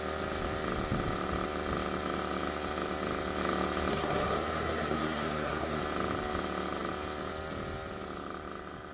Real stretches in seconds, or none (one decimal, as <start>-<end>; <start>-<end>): 0.0-3.9; 5.8-8.9